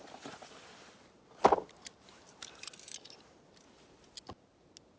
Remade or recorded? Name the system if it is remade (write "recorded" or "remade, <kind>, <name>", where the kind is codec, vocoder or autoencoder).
recorded